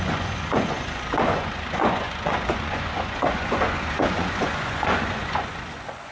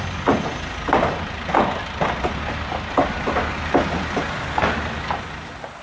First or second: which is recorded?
second